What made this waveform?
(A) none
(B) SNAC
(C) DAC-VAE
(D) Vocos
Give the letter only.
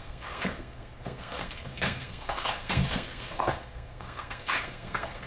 B